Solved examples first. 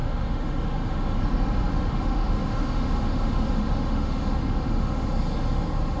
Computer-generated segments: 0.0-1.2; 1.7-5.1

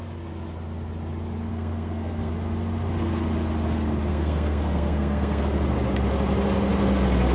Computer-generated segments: 1.5-2.3; 4.1-5.4